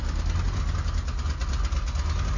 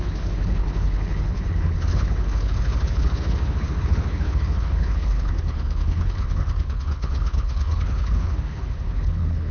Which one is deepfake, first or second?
second